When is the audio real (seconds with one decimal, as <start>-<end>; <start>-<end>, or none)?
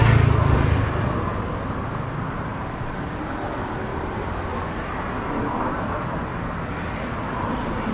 0.0-2.5; 3.1-3.9; 4.9-7.9